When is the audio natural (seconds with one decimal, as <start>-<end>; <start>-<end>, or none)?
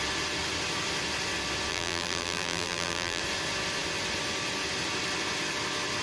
0.0-1.7; 3.2-6.0